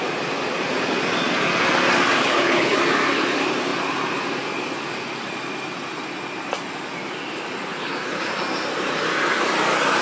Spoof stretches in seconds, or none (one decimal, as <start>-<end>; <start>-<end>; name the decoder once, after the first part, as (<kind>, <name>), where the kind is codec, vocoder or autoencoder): 2.2-2.8 (codec, HILCodec); 7.7-8.3